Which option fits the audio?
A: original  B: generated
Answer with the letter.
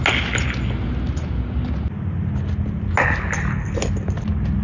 A